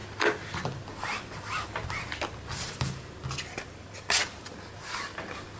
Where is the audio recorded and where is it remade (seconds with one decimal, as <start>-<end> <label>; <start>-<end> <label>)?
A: 0.0-5.6 recorded